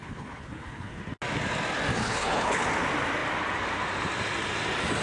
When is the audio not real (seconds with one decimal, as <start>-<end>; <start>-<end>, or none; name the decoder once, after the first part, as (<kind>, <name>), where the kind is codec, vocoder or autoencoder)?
0.0-1.0 (codec, HILCodec); 2.0-2.6